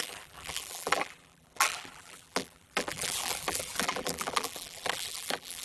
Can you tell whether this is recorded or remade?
remade